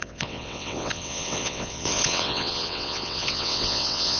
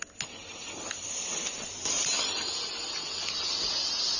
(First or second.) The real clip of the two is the second